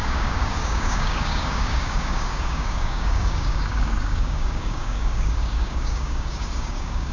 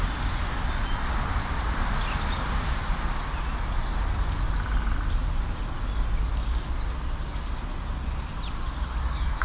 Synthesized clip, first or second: first